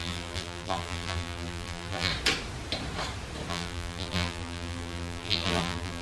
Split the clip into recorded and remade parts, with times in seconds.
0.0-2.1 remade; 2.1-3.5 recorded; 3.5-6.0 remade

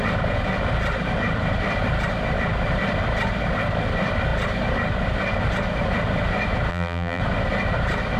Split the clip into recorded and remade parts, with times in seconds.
0.0-6.7 recorded; 6.7-7.2 remade; 7.2-8.2 recorded